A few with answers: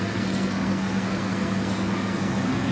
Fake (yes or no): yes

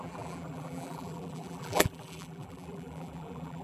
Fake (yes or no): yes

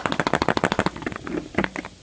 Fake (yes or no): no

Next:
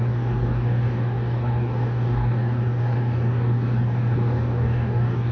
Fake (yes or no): yes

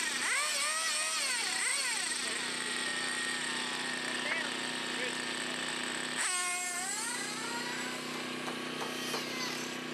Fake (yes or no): no